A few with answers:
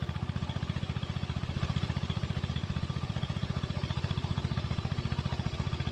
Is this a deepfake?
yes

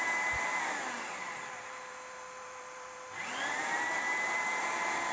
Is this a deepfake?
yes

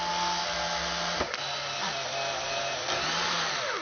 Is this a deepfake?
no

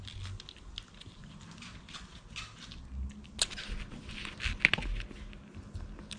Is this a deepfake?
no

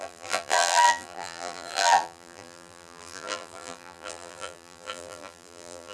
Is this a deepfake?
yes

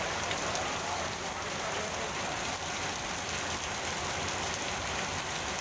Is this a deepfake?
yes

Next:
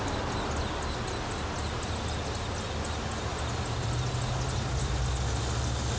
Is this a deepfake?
no